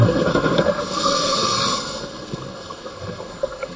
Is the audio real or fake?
fake